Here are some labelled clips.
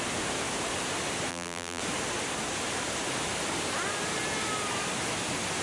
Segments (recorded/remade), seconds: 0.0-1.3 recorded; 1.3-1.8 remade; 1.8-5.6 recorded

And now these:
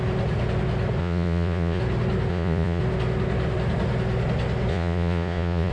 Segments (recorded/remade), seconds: 0.0-1.0 recorded; 1.0-1.8 remade; 1.8-2.3 recorded; 2.3-2.8 remade; 2.8-4.7 recorded; 4.7-5.7 remade

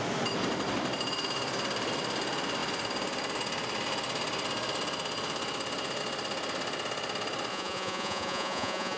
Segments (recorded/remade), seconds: 0.0-7.5 recorded; 7.5-9.0 remade

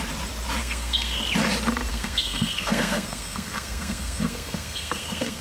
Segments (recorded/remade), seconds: 0.0-0.6 recorded; 0.6-1.2 remade; 1.2-1.9 recorded; 1.9-5.4 remade

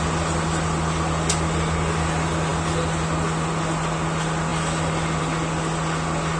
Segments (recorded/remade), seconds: 0.0-6.4 recorded

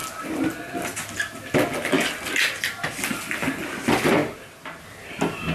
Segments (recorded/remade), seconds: 0.0-5.5 recorded

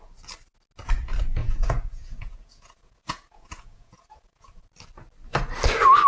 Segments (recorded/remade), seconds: 0.0-1.4 recorded; 1.4-4.7 remade; 4.7-6.1 recorded